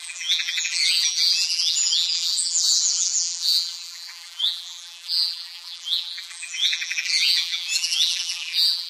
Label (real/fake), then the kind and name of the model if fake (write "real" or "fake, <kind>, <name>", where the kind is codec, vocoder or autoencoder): fake, vocoder, BigVGAN v2